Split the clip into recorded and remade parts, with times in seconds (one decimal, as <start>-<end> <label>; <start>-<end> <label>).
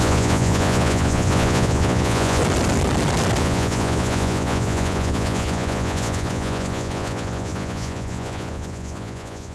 0.0-2.4 remade; 2.4-3.4 recorded; 3.4-9.5 remade